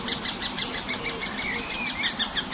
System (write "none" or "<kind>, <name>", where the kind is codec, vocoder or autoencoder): none